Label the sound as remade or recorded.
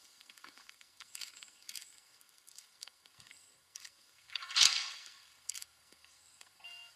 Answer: remade